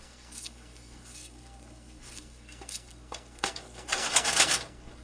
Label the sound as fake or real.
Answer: fake